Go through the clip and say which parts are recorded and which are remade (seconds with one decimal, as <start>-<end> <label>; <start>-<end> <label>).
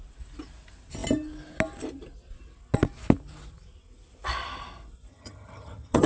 0.0-5.1 recorded; 5.1-6.1 remade